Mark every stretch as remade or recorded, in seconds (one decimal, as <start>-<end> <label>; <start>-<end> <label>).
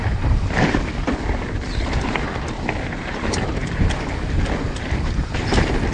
0.0-5.9 remade